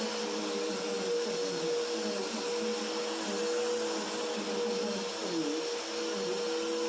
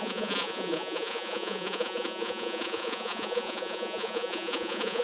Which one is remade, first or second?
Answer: second